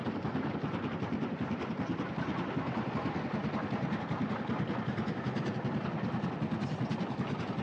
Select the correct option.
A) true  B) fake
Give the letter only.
A